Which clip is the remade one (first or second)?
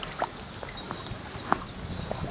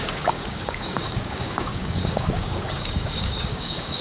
second